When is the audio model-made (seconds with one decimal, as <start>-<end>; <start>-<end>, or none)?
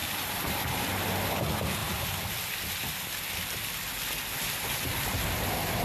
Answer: 0.0-1.3; 1.8-2.3